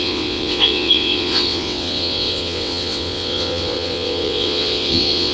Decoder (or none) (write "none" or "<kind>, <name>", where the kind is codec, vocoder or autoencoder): vocoder, WaveNeXt